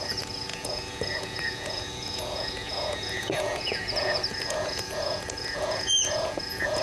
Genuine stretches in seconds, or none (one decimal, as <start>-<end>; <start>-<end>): none